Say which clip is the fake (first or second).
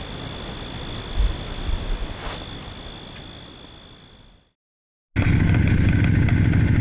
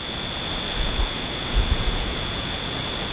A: second